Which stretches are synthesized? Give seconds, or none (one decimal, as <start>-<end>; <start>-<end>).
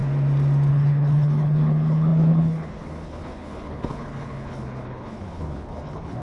0.7-6.2